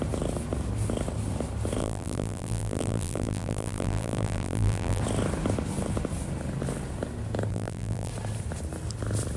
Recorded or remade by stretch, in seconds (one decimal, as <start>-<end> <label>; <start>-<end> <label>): 0.0-1.8 recorded; 1.8-5.0 remade; 5.0-7.5 recorded; 7.5-8.1 remade; 8.1-9.4 recorded